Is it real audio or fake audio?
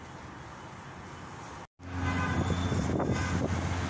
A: real